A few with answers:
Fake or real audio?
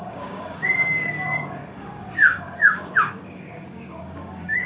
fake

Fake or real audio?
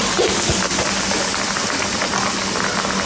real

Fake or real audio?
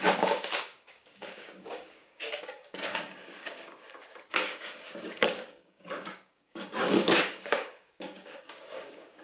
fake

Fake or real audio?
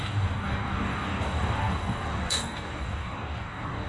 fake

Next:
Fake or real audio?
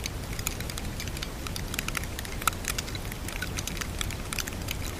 real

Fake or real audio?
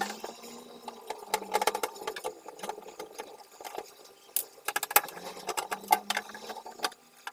real